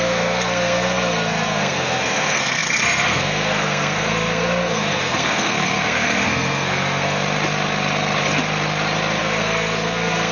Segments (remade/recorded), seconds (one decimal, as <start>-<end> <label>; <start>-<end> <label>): 0.0-7.2 remade; 7.2-9.2 recorded; 9.2-10.3 remade